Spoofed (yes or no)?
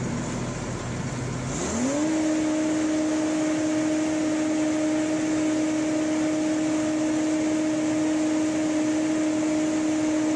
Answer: no